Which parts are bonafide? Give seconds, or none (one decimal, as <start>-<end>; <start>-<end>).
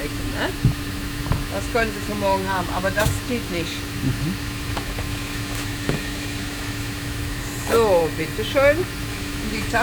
8.0-9.0